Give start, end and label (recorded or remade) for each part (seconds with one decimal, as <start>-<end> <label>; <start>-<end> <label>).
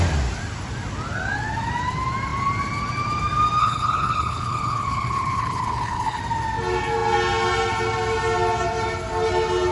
0.0-3.6 recorded; 3.6-6.2 remade; 6.2-9.7 recorded